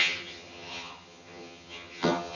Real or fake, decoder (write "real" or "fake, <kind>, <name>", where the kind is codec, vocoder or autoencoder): fake, vocoder, HiFi-GAN